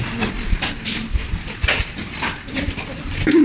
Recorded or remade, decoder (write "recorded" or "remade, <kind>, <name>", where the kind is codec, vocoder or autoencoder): recorded